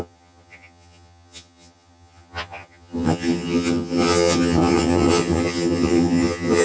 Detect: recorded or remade remade